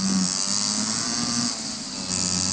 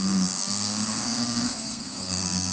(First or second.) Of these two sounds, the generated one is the second